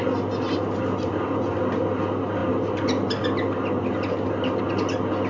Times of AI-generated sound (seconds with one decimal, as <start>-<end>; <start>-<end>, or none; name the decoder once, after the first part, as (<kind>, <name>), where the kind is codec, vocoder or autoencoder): none